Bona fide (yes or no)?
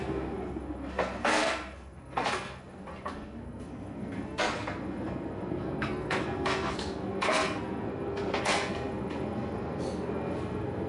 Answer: no